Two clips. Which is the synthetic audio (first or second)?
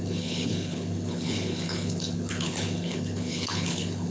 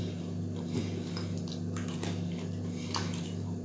first